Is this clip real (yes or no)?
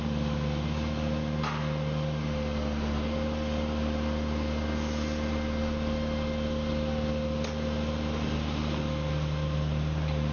yes